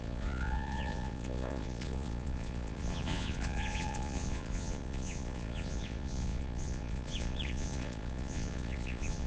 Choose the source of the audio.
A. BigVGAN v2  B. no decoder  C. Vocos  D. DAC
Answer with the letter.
C